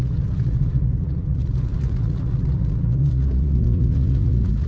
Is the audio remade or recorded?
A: remade